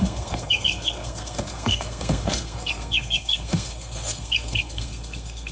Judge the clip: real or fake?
fake